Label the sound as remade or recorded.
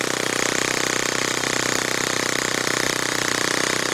recorded